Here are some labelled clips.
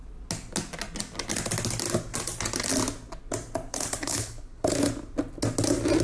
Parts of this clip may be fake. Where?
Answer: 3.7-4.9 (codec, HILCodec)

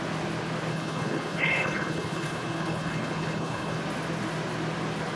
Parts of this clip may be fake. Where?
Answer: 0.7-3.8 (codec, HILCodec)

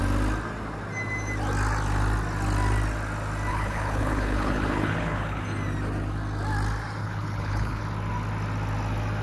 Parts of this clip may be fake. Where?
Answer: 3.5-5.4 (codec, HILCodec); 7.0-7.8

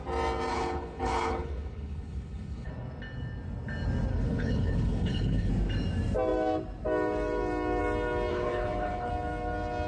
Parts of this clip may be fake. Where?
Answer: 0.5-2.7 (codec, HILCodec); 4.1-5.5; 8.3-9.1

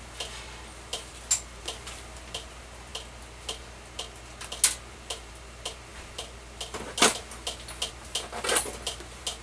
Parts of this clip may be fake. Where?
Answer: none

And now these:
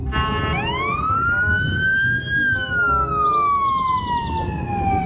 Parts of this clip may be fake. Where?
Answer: none